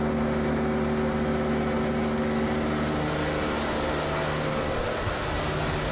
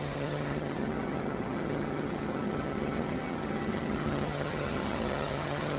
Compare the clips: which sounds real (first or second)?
first